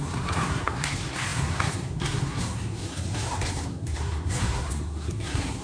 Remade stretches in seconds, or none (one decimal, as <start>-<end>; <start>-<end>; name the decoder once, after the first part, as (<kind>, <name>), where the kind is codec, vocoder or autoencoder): 0.0-5.6 (codec, SNAC)